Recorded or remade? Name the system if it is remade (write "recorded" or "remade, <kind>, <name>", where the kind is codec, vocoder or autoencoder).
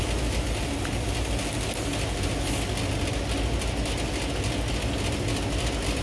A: recorded